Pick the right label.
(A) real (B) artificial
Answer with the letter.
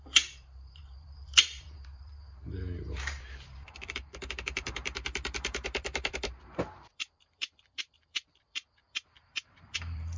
B